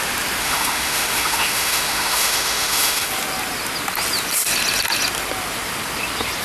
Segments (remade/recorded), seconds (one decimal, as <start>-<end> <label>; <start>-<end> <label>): 0.0-0.4 recorded; 0.4-3.1 remade; 3.1-6.4 recorded